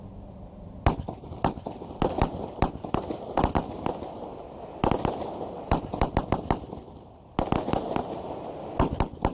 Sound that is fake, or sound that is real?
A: fake